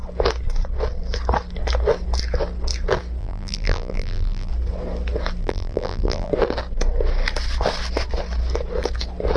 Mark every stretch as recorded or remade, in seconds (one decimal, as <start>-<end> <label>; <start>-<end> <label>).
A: 0.0-3.2 recorded; 3.2-4.5 remade; 4.5-5.4 recorded; 5.4-6.3 remade; 6.3-9.4 recorded